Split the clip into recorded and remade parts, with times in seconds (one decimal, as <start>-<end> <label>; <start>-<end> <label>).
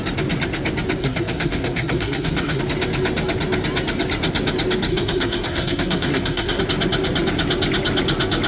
0.0-1.0 recorded; 1.0-2.6 remade; 2.6-4.9 recorded; 4.9-6.6 remade; 6.6-8.5 recorded